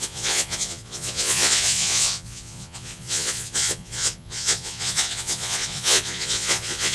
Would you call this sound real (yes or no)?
no